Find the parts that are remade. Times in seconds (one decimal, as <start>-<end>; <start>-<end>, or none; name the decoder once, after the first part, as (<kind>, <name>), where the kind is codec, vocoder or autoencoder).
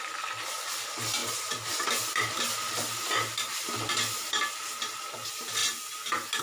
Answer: 1.2-5.0 (vocoder, BigVGAN v2)